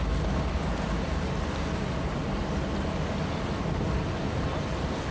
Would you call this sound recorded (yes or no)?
yes